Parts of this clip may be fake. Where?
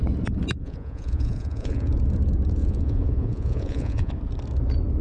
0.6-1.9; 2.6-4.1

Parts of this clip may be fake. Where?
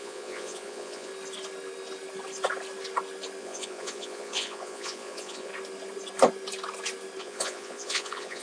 0.0-1.1; 3.4-5.5; 7.2-8.4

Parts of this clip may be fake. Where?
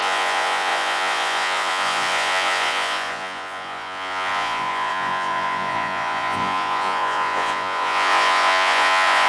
0.0-9.3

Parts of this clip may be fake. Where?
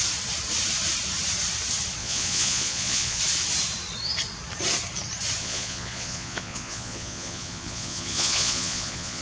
2.0-3.2; 5.4-9.2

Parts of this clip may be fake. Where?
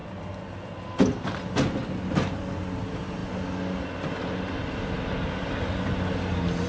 none